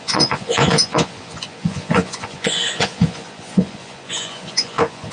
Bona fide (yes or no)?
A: no